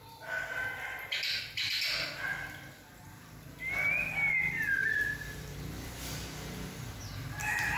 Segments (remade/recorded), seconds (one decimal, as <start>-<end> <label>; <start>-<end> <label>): 0.0-4.8 recorded; 4.8-5.9 remade; 5.9-7.8 recorded